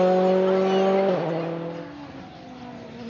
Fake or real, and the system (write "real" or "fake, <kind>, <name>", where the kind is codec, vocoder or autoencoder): real